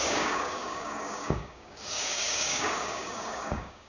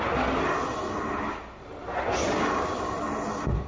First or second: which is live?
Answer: second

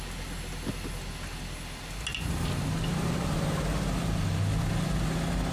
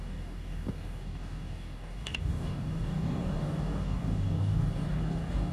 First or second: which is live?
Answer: first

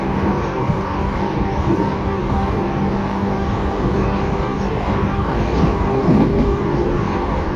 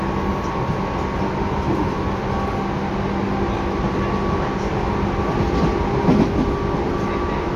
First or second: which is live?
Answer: second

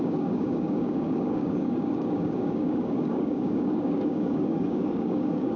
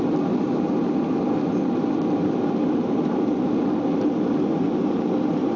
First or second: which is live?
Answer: second